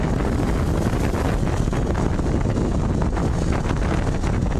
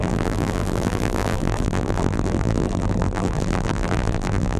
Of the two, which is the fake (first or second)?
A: second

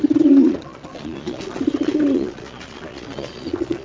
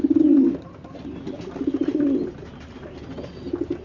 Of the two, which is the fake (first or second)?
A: first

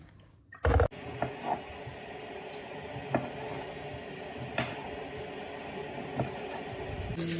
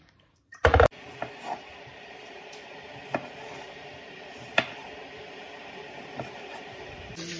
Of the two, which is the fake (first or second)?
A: second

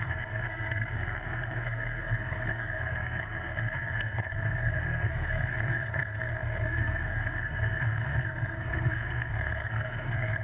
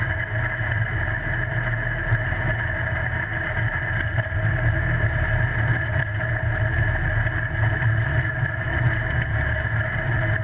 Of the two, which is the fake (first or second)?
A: first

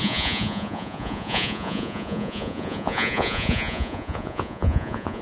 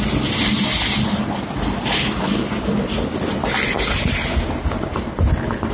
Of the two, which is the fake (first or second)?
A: first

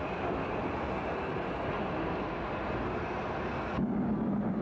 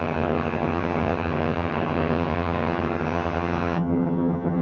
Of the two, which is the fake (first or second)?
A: second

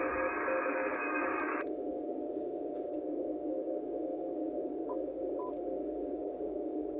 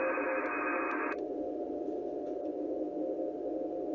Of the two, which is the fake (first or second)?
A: first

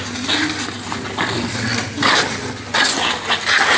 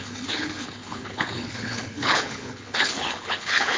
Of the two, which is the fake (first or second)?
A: second